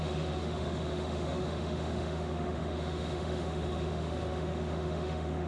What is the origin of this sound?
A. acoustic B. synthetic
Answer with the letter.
B